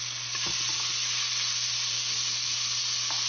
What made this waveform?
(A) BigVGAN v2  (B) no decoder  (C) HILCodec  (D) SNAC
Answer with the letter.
B